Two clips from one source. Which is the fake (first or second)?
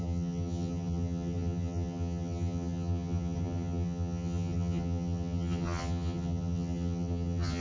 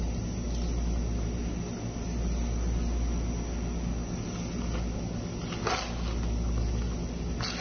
first